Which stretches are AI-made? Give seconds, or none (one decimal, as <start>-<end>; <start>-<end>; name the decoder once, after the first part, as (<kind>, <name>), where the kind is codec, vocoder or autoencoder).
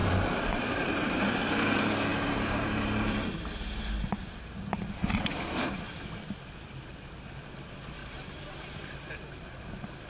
0.0-1.2 (vocoder, BigVGAN v2); 2.1-6.0; 8.0-8.5